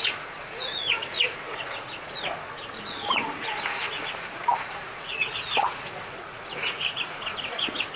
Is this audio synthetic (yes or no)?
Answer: yes